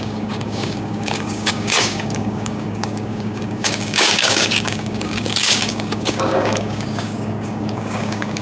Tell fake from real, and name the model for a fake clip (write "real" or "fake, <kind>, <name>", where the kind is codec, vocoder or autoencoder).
fake, codec, DAC